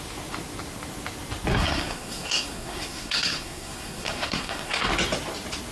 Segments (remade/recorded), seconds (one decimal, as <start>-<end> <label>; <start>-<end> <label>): 0.0-1.5 recorded; 1.5-4.9 remade; 4.9-5.7 recorded